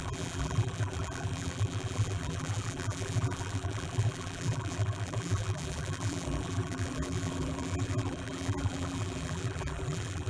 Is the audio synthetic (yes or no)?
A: yes